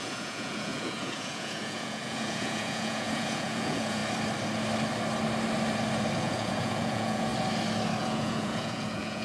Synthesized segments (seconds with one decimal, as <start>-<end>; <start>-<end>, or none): 0.0-4.0; 6.2-7.3; 8.0-9.2